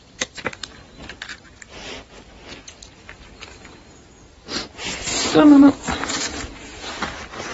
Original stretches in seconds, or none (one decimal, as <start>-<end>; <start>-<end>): 0.0-5.1; 6.9-7.5